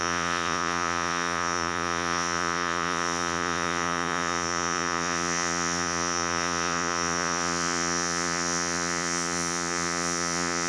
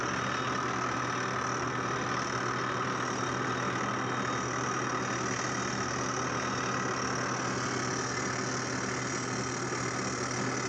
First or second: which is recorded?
second